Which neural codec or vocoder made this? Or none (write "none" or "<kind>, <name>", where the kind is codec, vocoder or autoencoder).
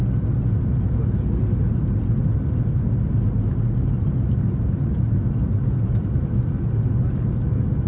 none